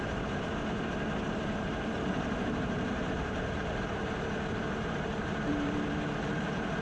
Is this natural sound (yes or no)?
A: no